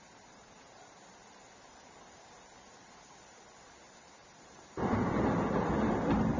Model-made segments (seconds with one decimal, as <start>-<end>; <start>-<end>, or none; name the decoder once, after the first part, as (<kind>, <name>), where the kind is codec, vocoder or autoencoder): none